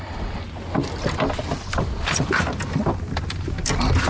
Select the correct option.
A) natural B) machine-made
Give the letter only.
A